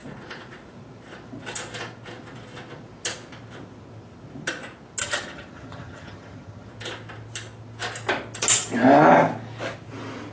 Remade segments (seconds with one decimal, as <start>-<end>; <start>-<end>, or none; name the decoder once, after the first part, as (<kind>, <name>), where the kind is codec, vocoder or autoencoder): 5.0-6.7 (vocoder, HiFi-GAN)